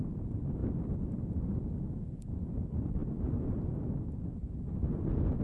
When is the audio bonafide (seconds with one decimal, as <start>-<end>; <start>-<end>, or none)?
0.0-0.6; 2.5-3.0; 3.7-5.4